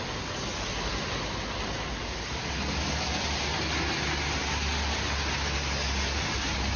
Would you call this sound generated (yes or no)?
no